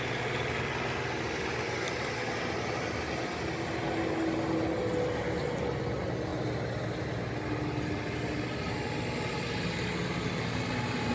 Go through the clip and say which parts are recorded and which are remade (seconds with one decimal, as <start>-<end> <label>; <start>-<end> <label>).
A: 0.0-11.1 recorded